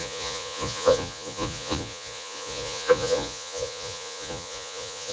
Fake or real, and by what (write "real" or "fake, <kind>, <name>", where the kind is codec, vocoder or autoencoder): fake, vocoder, Vocos